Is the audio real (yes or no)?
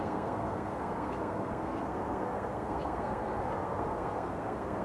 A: no